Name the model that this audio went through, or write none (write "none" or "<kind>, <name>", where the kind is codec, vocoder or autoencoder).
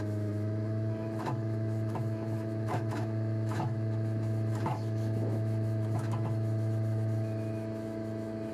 autoencoder, DAC-VAE